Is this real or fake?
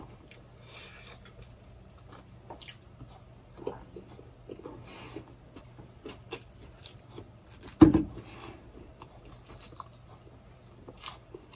real